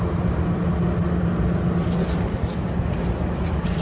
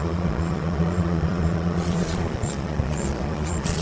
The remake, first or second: second